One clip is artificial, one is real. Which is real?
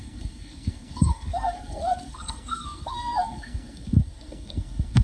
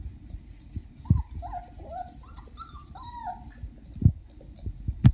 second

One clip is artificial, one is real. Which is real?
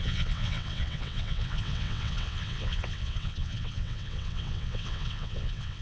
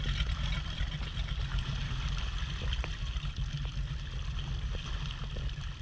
second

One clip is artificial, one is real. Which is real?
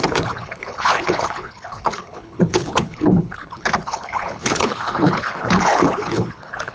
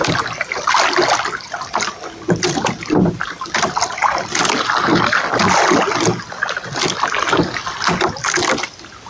second